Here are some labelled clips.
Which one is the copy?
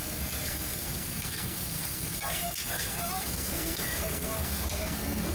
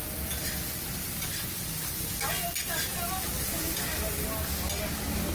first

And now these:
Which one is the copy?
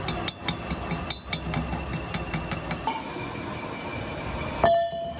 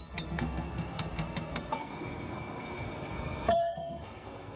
second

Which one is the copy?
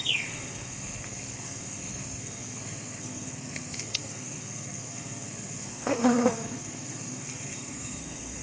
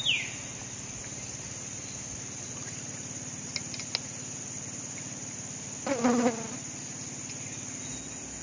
first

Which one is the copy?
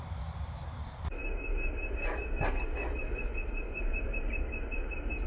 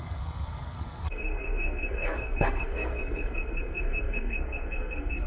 second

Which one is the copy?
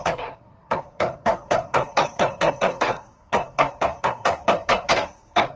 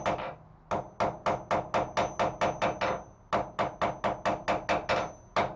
first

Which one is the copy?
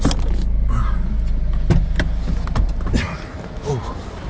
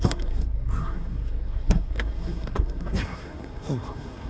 second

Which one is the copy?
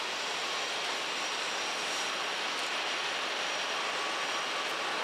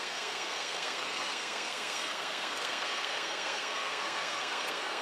second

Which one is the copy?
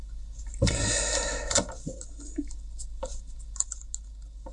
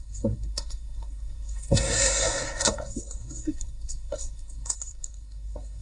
second